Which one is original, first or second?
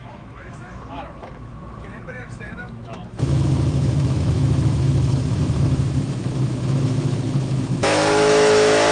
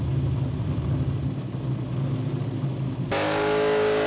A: second